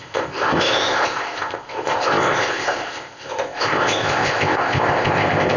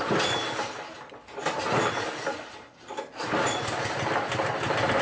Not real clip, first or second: first